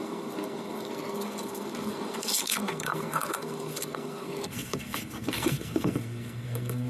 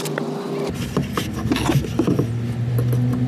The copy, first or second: first